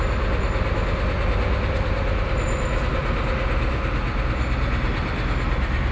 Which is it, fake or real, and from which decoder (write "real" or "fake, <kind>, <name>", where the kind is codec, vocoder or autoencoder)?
real